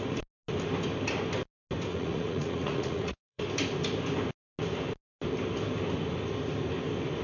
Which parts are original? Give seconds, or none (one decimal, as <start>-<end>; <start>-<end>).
0.0-1.9; 3.4-7.2